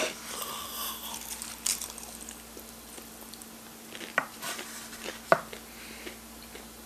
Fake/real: fake